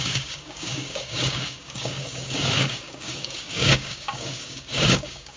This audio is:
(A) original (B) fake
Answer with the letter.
B